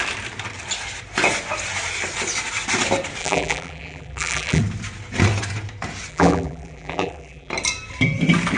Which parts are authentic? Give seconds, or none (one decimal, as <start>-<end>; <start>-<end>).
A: 0.0-3.2; 4.6-6.1; 7.5-8.6